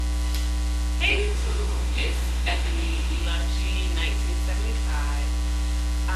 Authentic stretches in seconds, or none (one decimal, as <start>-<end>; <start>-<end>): 0.0-1.1; 3.2-6.2